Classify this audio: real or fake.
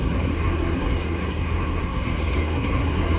fake